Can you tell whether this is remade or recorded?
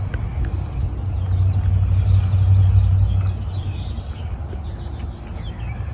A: recorded